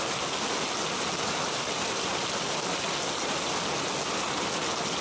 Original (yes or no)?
yes